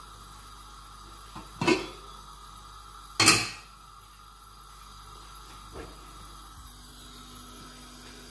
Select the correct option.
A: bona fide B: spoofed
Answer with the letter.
A